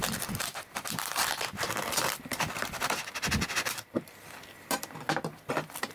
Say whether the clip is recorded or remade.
remade